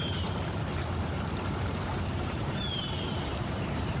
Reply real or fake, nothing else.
fake